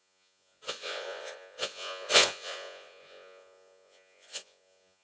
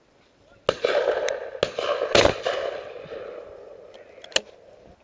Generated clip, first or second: first